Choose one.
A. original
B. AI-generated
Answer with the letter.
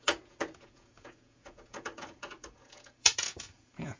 B